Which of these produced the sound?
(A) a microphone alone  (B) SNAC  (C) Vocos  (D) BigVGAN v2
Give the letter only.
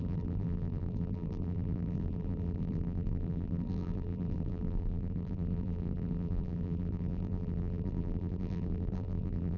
D